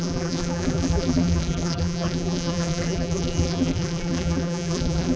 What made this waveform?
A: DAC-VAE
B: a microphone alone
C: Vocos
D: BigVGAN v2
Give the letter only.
D